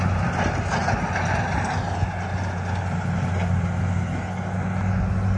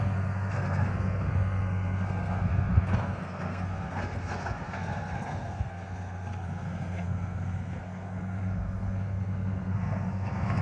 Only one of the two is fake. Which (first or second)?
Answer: second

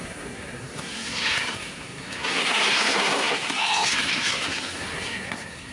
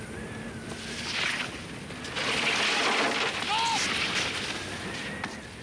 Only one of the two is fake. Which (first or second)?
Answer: first